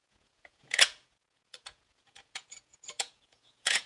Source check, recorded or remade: remade